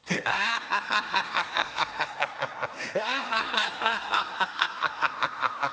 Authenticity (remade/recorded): remade